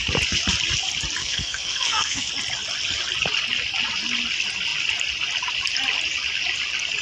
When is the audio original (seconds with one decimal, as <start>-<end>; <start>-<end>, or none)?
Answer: 0.0-1.2; 2.3-7.0